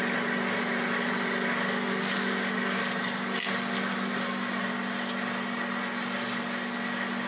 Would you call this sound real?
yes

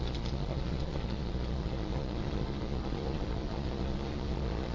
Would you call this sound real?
no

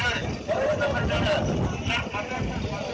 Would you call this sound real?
yes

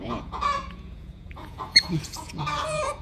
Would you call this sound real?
no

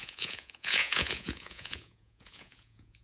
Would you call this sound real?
no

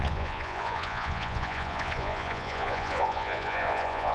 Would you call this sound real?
no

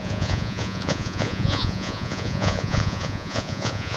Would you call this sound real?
no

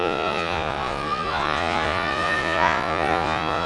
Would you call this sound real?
no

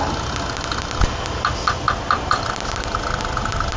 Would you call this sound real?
yes